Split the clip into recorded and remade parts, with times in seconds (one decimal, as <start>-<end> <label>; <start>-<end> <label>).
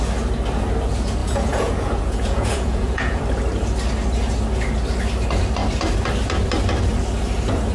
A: 0.0-1.2 recorded; 1.2-3.2 remade; 3.2-7.7 recorded